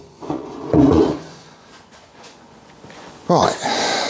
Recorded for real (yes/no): no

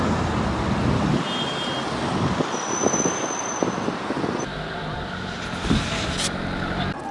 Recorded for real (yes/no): yes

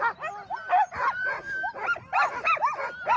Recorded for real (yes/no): yes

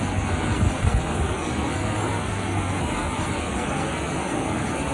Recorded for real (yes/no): no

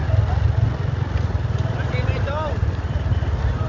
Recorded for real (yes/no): yes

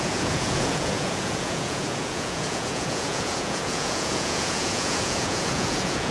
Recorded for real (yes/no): no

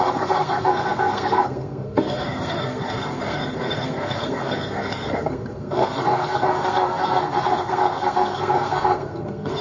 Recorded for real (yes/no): no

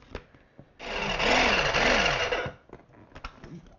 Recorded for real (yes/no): yes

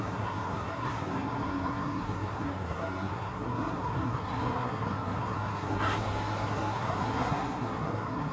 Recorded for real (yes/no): no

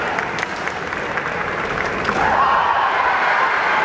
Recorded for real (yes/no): yes